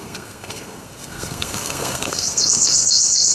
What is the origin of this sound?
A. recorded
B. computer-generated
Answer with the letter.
B